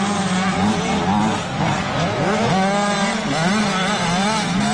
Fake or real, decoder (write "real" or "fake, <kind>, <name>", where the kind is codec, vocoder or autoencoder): real